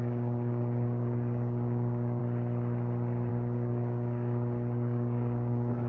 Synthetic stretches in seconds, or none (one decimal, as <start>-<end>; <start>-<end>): 0.0-2.2; 3.3-5.9